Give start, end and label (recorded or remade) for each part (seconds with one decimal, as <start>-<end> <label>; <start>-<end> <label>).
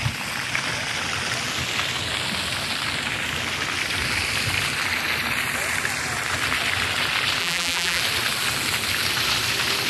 0.0-7.4 recorded; 7.4-8.0 remade; 8.0-9.9 recorded